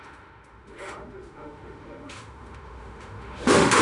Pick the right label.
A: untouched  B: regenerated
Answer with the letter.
B